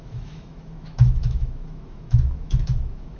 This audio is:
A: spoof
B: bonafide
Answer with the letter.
A